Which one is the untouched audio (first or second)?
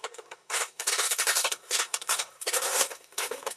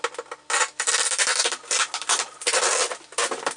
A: second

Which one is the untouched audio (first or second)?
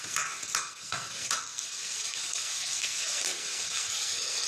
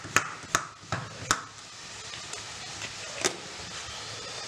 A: second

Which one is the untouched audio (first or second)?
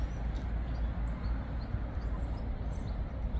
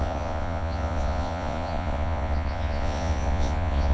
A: first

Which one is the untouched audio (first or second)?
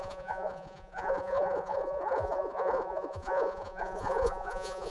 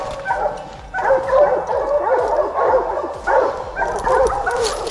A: second